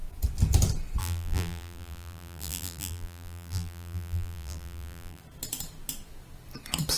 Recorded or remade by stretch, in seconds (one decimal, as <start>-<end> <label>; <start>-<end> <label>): 0.0-1.0 recorded; 1.0-5.2 remade; 5.2-7.0 recorded